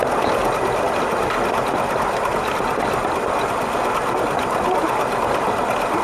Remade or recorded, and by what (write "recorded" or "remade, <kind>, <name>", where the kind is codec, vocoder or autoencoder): recorded